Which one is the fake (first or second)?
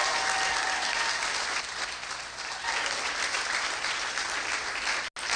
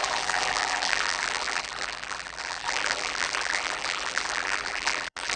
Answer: second